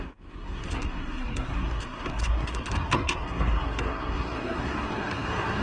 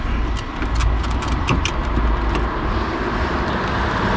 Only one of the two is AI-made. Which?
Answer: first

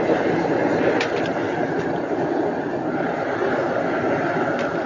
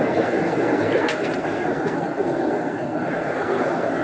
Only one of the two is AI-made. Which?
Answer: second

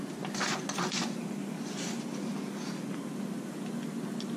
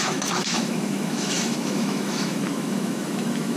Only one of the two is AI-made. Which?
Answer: second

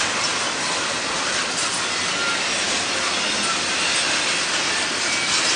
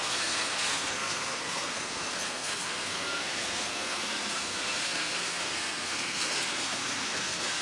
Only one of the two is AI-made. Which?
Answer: second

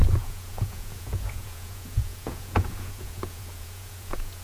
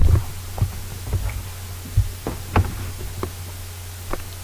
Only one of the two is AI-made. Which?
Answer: first